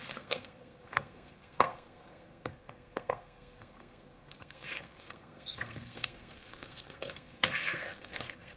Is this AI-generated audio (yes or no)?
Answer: yes